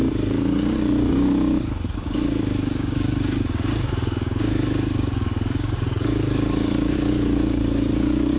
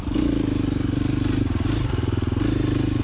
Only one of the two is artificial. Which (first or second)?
first